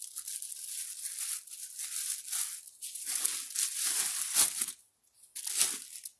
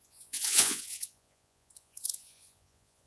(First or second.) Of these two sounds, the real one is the first